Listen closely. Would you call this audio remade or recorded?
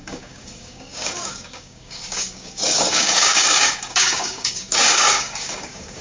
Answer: remade